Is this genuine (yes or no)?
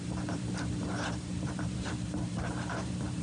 no